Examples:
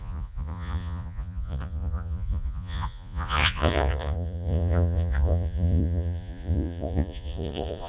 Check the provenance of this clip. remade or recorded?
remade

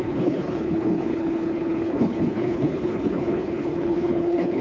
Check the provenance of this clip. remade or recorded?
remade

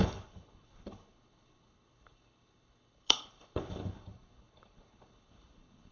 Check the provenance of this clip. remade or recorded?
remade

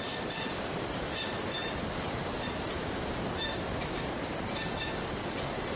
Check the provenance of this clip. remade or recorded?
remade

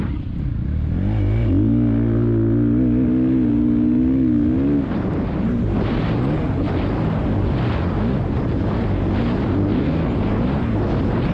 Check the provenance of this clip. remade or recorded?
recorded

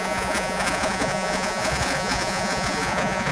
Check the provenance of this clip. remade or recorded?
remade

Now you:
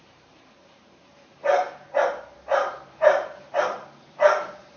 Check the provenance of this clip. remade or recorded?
remade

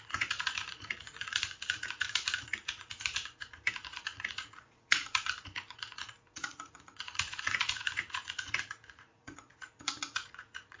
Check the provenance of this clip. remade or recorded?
remade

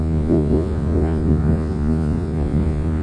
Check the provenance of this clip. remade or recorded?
remade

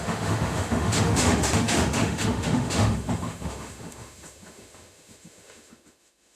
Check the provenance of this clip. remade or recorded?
remade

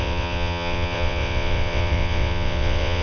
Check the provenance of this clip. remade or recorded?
remade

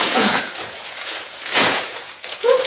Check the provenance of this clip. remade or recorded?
remade